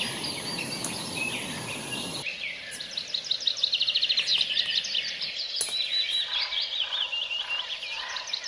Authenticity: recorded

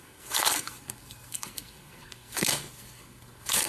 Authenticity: remade